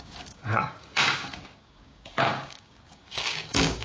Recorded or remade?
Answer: remade